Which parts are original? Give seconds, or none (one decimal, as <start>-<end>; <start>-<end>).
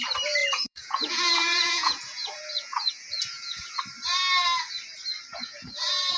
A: 0.0-0.4; 3.8-5.3